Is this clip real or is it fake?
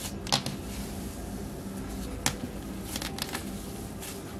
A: real